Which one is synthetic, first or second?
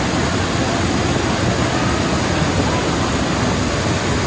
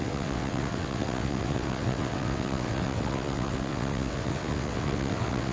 second